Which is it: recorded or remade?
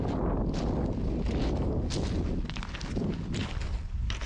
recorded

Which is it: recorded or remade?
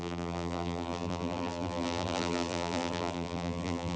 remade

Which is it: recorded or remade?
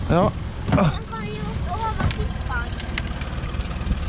recorded